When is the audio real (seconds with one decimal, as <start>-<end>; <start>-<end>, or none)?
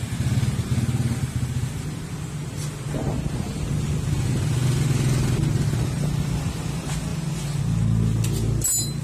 0.0-9.0